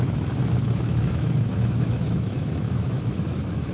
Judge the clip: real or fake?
fake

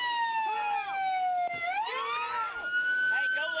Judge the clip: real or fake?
real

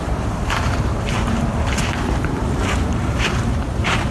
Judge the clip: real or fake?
fake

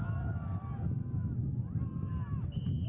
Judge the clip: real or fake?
real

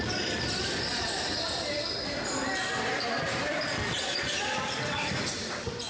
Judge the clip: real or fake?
fake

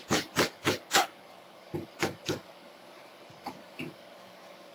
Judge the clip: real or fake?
fake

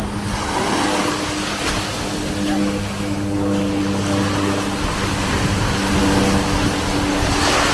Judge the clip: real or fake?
real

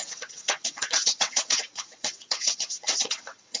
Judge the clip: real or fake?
fake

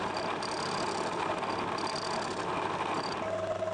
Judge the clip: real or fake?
real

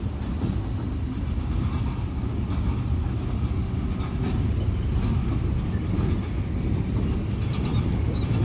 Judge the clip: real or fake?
real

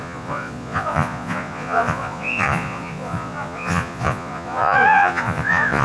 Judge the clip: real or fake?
fake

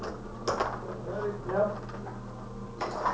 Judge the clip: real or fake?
real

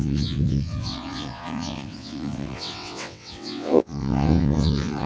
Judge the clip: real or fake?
fake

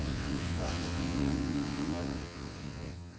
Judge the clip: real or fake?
fake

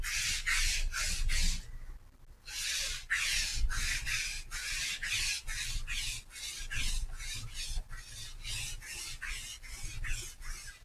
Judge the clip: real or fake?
real